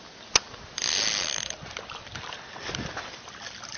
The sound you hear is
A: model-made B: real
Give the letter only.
B